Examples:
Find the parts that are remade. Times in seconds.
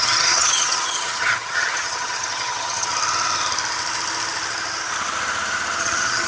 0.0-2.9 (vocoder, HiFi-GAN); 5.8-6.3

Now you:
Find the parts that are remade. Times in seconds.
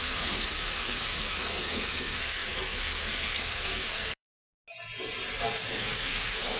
0.0-4.3 (codec, SNAC); 5.7-6.6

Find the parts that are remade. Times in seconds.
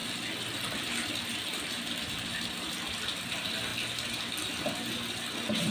0.0-3.2 (vocoder, BigVGAN v2); 3.7-4.9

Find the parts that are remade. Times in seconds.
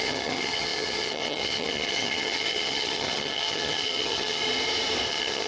0.0-4.4 (vocoder, HiFi-GAN); 5.1-5.5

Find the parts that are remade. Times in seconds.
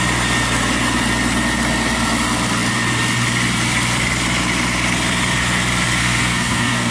6.0-6.9 (codec, SNAC)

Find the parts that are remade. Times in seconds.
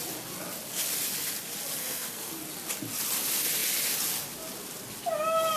1.8-2.4 (codec, SNAC)